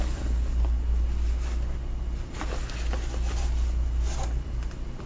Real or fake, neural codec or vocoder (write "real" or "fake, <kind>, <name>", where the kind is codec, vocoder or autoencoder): real